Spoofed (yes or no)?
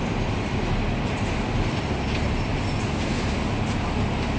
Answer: no